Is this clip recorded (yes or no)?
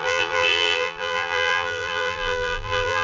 no